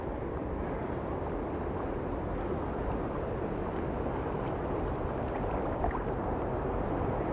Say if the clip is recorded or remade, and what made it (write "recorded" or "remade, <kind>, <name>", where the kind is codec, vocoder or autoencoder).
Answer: recorded